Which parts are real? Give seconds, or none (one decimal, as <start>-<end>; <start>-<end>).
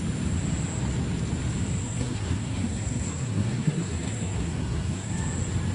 0.0-1.8; 5.1-5.7